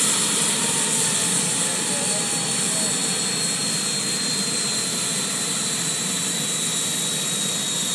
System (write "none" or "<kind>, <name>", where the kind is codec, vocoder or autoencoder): none